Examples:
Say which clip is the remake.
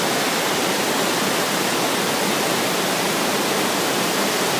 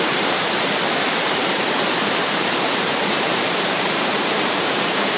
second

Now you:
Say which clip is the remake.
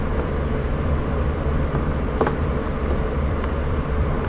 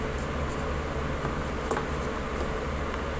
first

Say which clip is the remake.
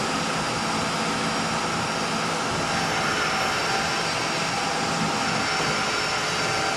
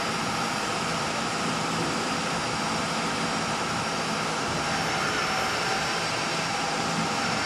second